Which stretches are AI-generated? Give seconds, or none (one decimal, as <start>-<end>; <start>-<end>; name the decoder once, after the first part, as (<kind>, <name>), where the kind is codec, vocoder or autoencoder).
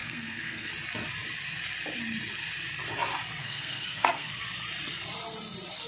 0.0-0.7 (codec, SNAC); 3.4-4.4